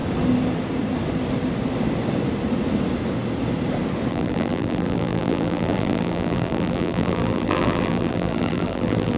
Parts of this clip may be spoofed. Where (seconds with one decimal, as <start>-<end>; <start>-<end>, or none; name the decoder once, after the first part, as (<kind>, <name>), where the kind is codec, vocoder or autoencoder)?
4.1-9.2 (vocoder, BigVGAN v2)